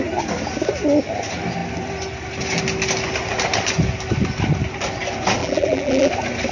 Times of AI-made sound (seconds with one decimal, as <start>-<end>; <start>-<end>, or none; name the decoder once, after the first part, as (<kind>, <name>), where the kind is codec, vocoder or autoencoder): 5.4-6.1 (vocoder, BigVGAN v2)